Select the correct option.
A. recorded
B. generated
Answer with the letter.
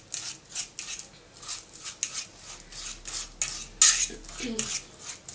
A